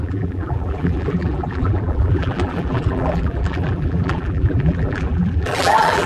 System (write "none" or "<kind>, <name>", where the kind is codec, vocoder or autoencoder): vocoder, BigVGAN v2